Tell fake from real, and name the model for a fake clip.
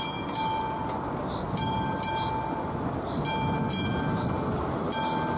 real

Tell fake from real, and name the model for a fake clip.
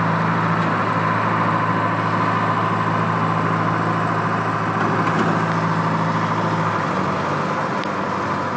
real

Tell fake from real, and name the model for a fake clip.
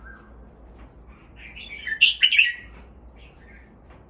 real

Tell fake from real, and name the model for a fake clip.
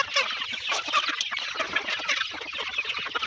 real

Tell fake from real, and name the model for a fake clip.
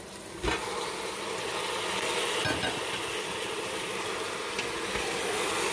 real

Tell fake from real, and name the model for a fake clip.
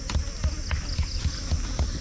real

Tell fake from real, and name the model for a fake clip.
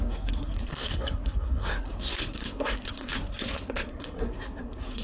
fake, codec, SNAC